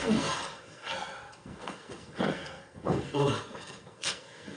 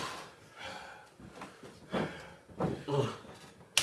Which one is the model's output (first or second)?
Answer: first